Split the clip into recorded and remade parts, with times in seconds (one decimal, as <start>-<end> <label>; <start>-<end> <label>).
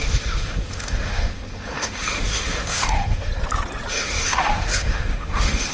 0.0-3.3 remade; 3.3-3.9 recorded; 3.9-5.7 remade